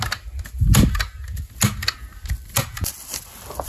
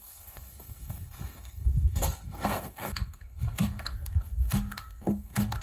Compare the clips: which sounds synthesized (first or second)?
second